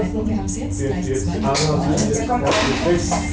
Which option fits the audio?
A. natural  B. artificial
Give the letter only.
A